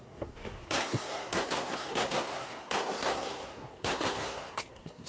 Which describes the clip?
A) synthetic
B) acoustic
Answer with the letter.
A